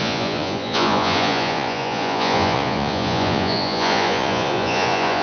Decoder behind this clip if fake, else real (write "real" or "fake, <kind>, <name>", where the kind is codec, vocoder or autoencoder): fake, vocoder, Vocos